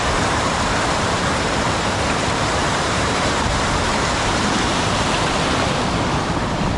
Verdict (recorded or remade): remade